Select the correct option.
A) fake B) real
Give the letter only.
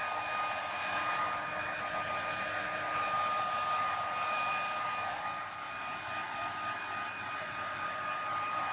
B